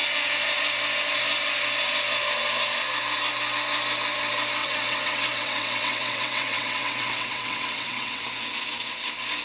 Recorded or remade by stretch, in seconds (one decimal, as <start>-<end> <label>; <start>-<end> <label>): 0.0-4.6 recorded; 4.6-8.2 remade; 8.2-9.4 recorded